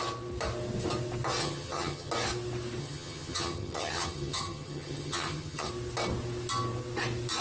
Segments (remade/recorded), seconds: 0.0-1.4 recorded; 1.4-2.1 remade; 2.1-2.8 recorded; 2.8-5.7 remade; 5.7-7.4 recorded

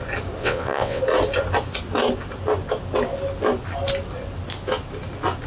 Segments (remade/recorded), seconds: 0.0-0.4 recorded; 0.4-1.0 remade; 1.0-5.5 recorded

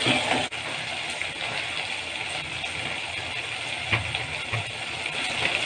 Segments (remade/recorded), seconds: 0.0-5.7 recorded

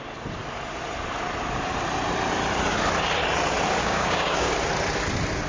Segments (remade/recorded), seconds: 0.0-3.8 recorded; 3.8-4.5 remade; 4.5-5.5 recorded

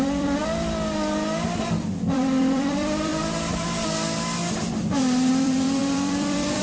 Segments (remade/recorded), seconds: 0.0-0.4 remade; 0.4-1.7 recorded; 1.7-3.1 remade; 3.1-5.3 recorded; 5.3-6.6 remade

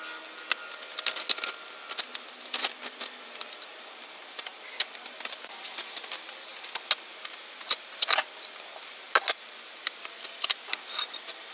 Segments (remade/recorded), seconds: 0.0-11.5 recorded